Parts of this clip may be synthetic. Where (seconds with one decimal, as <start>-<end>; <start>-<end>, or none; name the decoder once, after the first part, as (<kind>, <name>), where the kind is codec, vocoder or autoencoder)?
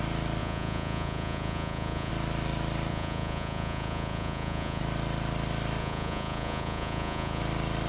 0.4-2.1 (vocoder, Vocos); 2.9-4.8; 5.8-7.4